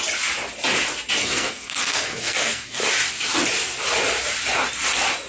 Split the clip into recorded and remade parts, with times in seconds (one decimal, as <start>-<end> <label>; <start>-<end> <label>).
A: 0.0-1.2 recorded; 1.2-2.8 remade; 2.8-5.3 recorded